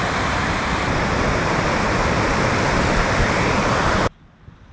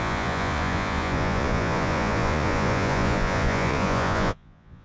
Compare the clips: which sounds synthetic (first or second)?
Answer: second